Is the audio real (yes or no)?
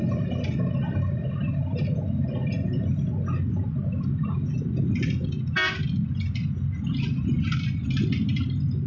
yes